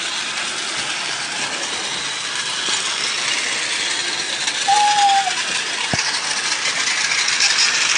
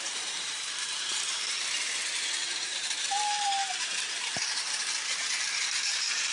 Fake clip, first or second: second